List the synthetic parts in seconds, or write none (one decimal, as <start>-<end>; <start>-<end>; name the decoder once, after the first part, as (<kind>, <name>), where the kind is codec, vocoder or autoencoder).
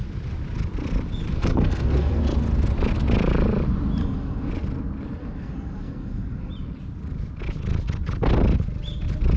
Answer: 1.3-2.2 (codec, SNAC); 4.0-4.5; 5.2-6.5